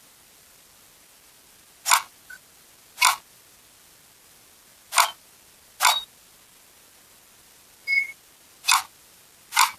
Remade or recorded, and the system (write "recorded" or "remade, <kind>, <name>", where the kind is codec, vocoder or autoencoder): recorded